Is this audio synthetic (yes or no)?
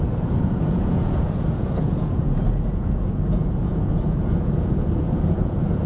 yes